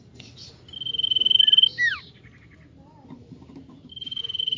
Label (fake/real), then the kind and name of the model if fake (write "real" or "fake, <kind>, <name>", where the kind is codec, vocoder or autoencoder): real